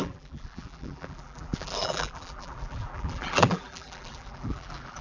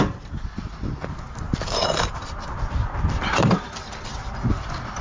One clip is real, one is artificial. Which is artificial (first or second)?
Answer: first